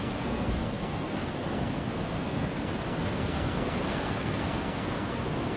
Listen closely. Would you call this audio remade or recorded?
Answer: remade